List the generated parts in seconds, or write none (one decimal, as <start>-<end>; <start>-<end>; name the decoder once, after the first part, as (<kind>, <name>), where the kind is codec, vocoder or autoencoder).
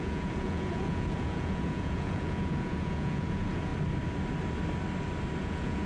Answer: 0.0-3.7 (vocoder, Vocos); 5.4-5.9